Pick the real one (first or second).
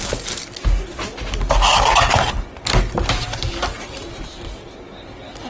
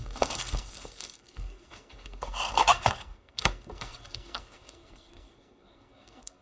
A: first